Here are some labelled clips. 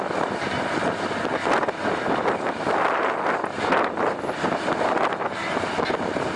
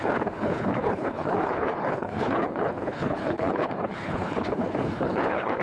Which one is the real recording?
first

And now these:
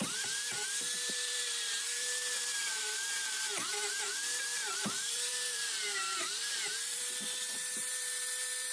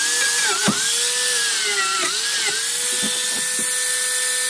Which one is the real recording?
second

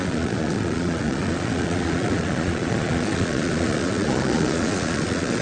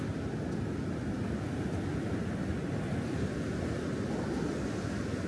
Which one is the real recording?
second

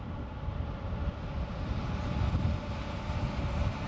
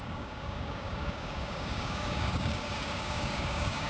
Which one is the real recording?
first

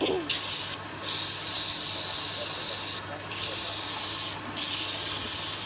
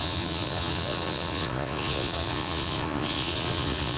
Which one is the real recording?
first